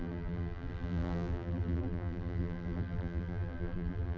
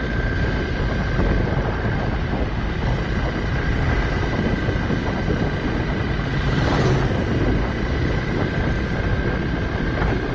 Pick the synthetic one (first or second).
first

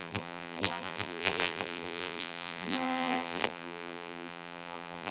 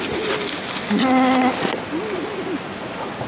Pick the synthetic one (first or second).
first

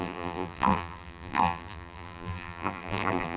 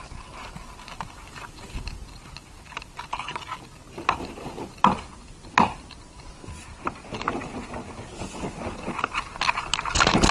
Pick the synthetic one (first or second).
first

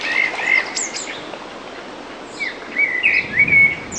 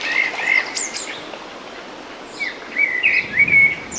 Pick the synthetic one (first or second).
second